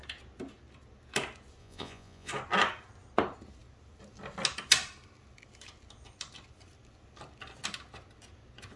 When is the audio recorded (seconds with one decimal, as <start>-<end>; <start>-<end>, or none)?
0.0-1.6; 2.3-8.8